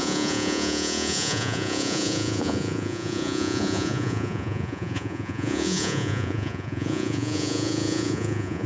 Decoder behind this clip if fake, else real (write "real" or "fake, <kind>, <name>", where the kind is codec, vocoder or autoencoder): fake, vocoder, Vocos